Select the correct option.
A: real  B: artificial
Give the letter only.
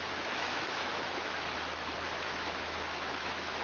B